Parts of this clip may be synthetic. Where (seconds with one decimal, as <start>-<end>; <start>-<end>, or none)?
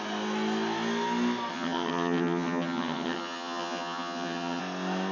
1.5-4.6